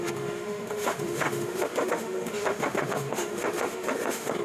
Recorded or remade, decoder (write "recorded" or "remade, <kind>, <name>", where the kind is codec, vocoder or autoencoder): remade, autoencoder, DAC-VAE